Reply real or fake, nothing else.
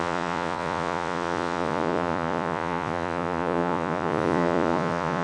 fake